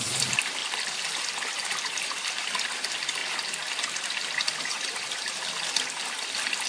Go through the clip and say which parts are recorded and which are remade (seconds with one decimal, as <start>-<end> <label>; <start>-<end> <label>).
0.0-0.6 remade; 0.6-1.2 recorded; 1.2-3.2 remade; 3.2-6.7 recorded